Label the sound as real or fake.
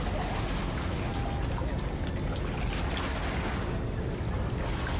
real